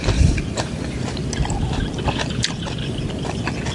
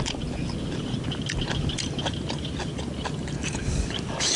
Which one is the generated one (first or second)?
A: first